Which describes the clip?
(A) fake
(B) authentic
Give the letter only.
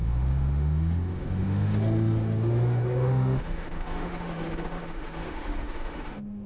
A